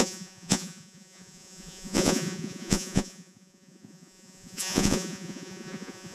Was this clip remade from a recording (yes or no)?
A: yes